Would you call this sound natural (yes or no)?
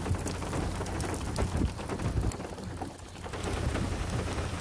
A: yes